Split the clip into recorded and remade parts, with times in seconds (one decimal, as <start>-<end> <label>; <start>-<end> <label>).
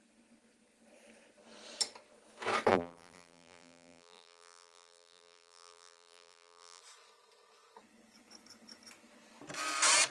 0.0-2.7 recorded; 2.7-6.8 remade; 6.8-10.1 recorded